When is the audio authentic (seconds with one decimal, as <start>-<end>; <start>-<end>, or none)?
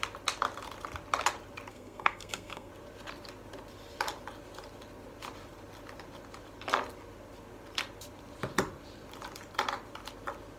0.0-1.7; 2.7-10.6